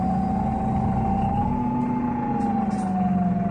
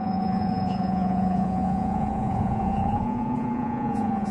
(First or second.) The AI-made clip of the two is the second